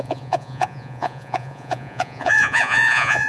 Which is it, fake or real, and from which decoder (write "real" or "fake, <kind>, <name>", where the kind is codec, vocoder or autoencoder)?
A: fake, vocoder, Vocos